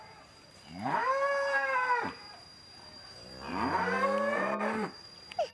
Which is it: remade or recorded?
remade